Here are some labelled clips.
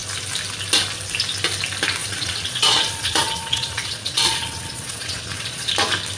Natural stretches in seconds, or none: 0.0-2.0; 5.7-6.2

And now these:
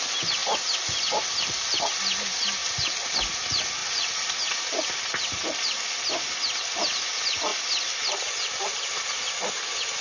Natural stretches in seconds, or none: 0.0-2.6; 3.1-3.8; 4.9-10.0

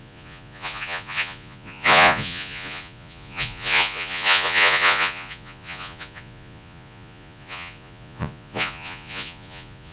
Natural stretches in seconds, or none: none

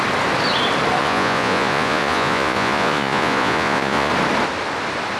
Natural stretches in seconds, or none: 0.0-1.0; 4.1-5.2